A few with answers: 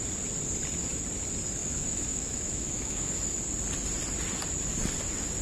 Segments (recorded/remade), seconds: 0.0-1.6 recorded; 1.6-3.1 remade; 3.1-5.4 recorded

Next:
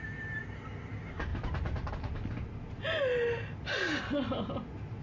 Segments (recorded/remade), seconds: 0.0-1.3 recorded; 1.3-1.9 remade; 1.9-5.0 recorded

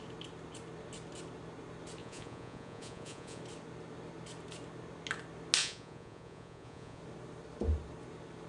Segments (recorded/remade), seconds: 0.0-2.0 recorded; 2.0-3.4 remade; 3.4-5.6 recorded; 5.6-7.0 remade; 7.0-8.5 recorded

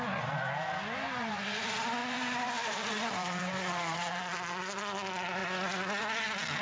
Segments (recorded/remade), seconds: 0.0-2.0 recorded; 2.0-4.8 remade; 4.8-6.6 recorded

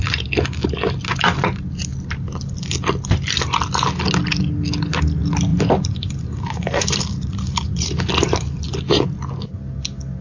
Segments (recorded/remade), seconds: 0.0-5.5 recorded; 5.5-8.0 remade; 8.0-10.2 recorded

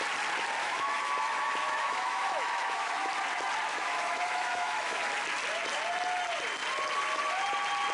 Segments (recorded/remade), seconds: 0.0-0.6 recorded; 0.6-3.1 remade; 3.1-3.7 recorded; 3.7-5.0 remade; 5.0-7.9 recorded

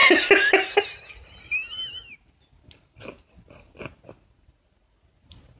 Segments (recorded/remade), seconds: 0.0-5.6 recorded

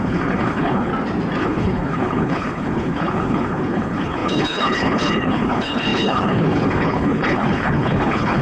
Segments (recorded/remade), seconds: 0.0-0.9 remade; 0.9-1.4 recorded; 1.4-8.4 remade